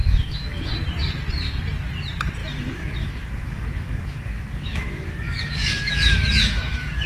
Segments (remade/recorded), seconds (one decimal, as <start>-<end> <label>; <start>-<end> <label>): 0.0-0.7 remade; 0.7-2.4 recorded; 2.4-7.1 remade